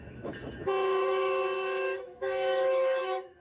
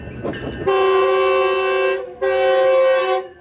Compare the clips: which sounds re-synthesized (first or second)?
first